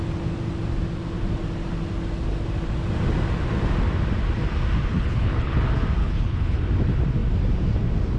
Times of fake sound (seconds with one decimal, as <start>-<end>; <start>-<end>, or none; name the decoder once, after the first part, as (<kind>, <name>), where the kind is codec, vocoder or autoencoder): 4.9-5.6 (codec, HILCodec); 6.0-6.6